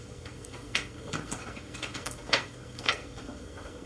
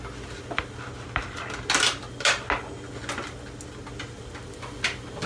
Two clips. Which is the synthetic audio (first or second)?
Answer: first